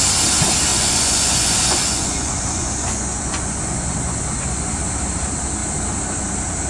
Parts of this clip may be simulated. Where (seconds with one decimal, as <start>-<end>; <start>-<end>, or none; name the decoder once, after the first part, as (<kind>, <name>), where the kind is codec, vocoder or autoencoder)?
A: 0.7-4.7 (vocoder, Vocos)